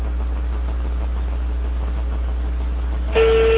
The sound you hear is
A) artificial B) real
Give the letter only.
B